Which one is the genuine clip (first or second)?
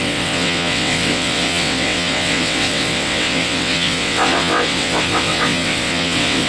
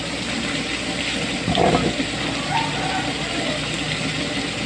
second